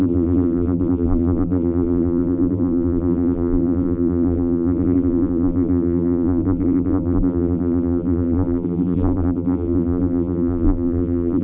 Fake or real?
fake